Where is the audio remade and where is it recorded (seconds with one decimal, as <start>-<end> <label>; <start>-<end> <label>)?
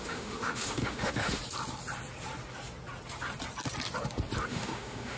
0.0-1.4 remade; 1.4-4.5 recorded; 4.5-5.2 remade